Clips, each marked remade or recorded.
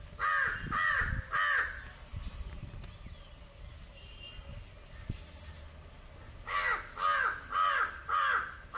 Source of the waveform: recorded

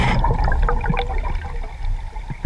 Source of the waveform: recorded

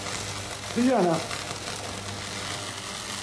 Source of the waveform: recorded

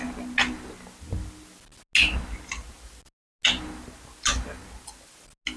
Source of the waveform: recorded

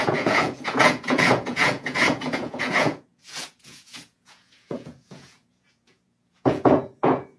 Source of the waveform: remade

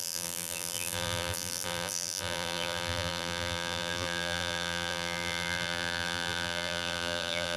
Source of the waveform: remade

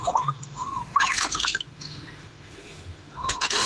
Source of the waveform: remade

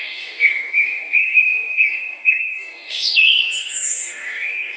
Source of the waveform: remade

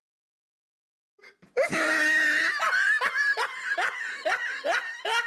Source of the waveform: recorded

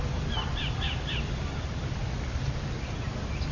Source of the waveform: recorded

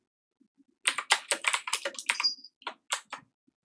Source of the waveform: recorded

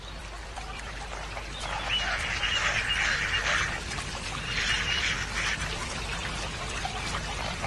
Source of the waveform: remade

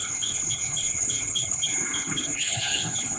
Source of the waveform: remade